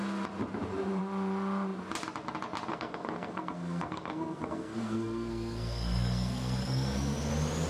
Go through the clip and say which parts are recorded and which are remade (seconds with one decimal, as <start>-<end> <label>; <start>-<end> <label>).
0.0-2.7 recorded; 2.7-7.3 remade; 7.3-7.7 recorded